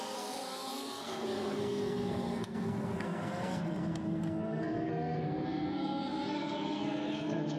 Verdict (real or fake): fake